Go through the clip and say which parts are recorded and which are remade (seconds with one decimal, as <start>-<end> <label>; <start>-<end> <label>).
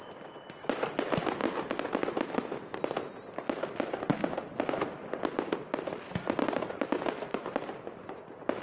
0.0-8.6 recorded